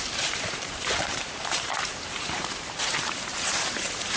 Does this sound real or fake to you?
fake